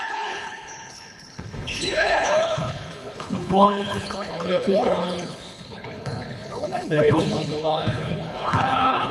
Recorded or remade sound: remade